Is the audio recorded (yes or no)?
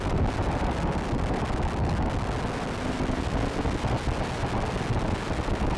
yes